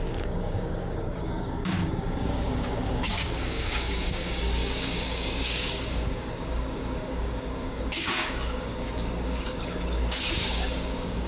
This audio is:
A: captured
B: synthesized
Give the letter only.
B